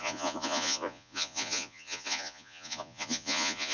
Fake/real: fake